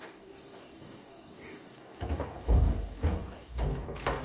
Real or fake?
fake